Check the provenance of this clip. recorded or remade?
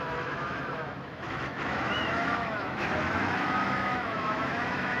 remade